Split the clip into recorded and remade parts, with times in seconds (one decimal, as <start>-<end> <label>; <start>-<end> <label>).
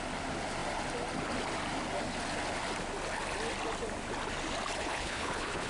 0.0-4.8 recorded; 4.8-5.7 remade